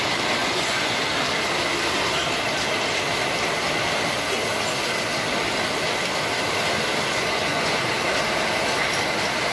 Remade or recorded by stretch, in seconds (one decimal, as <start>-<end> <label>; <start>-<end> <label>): 0.0-0.4 recorded; 0.4-1.0 remade; 1.0-7.1 recorded; 7.1-7.9 remade; 7.9-9.5 recorded